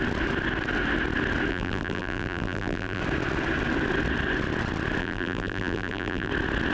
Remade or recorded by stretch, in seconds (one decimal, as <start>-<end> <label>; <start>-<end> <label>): 0.0-1.5 recorded; 1.5-3.0 remade; 3.0-5.0 recorded; 5.0-6.3 remade; 6.3-6.7 recorded